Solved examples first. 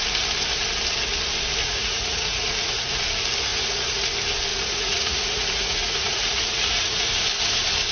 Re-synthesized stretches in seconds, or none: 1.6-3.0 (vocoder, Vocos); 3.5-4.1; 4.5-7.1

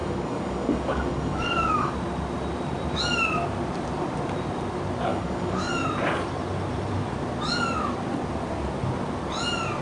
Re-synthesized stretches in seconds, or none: 0.0-1.9 (codec, DAC); 5.1-5.7

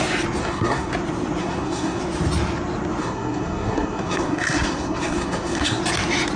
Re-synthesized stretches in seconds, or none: 0.4-0.9 (codec, SNAC); 1.4-2.0; 3.0-5.8

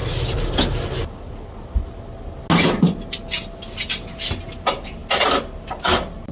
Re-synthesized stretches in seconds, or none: none